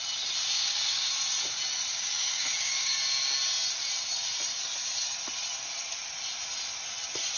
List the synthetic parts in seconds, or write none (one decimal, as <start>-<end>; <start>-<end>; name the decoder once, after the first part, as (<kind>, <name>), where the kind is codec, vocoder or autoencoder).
0.4-1.1 (codec, DAC); 1.9-3.0